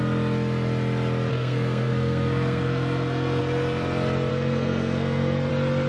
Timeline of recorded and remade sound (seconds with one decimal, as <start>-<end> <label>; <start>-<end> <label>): 0.0-1.3 recorded; 1.3-3.4 remade; 3.4-4.3 recorded; 4.3-5.5 remade; 5.5-5.9 recorded